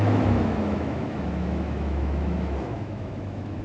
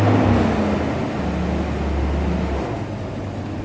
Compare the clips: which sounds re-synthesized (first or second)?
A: first